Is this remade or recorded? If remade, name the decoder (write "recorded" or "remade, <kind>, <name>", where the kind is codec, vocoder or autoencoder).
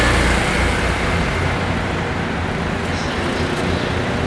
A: recorded